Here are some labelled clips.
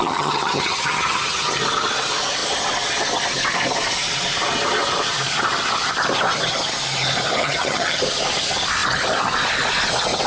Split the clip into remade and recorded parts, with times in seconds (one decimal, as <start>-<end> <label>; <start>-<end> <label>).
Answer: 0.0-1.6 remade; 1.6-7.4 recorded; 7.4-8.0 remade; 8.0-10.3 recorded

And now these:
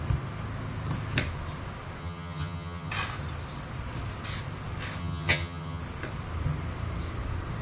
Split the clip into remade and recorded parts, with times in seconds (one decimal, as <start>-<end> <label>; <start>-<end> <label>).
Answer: 0.0-2.0 recorded; 2.0-2.9 remade; 2.9-5.0 recorded; 5.0-5.8 remade; 5.8-7.6 recorded

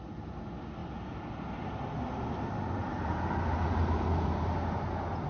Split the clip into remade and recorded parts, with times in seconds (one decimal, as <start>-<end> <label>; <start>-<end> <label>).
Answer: 0.0-5.3 recorded

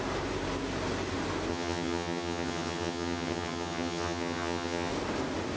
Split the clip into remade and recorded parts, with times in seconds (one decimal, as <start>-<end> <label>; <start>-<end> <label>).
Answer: 0.0-1.5 recorded; 1.5-4.9 remade; 4.9-5.6 recorded

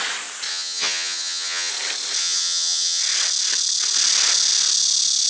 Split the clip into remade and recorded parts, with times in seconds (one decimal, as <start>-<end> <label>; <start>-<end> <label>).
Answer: 0.0-0.5 recorded; 0.5-1.7 remade; 1.7-2.2 recorded; 2.2-3.0 remade; 3.0-5.3 recorded